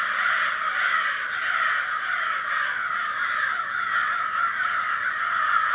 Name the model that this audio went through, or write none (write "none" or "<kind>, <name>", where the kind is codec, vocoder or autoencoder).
none